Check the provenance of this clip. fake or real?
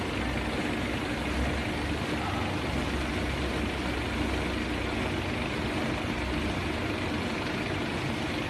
real